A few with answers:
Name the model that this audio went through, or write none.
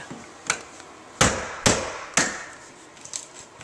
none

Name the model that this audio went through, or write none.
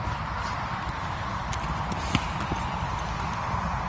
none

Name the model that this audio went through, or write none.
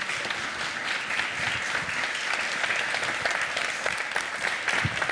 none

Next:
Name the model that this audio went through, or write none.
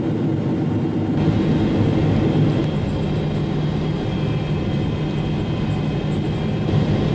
none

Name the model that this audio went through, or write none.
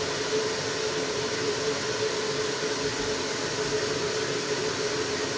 none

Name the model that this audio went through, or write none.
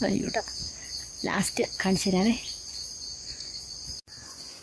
vocoder, Vocos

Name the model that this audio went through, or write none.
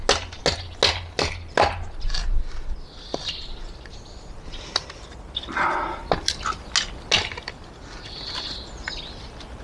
none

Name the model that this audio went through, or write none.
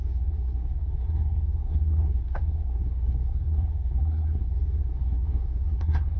codec, SNAC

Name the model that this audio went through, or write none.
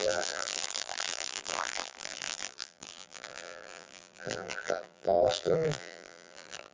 vocoder, BigVGAN v2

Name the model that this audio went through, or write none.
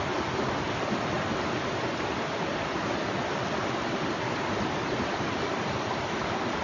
none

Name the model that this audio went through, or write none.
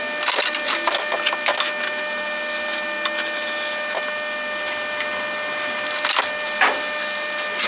none